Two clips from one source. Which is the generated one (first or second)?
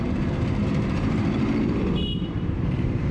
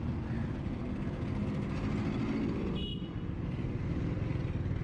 first